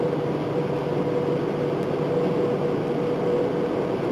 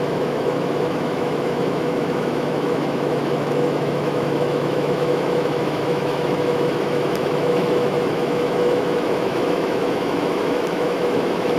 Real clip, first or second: first